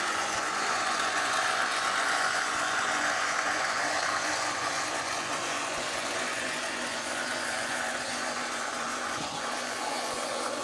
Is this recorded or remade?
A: remade